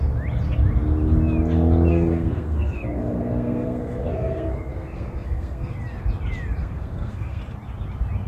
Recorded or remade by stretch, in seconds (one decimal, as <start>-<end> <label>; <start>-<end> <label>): 0.0-1.9 recorded; 1.9-5.7 remade; 5.7-6.6 recorded; 6.6-7.4 remade; 7.4-8.3 recorded